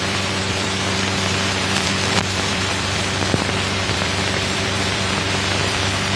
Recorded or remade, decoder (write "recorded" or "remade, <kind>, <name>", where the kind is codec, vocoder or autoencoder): remade, vocoder, BigVGAN v2